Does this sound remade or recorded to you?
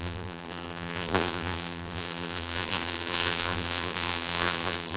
remade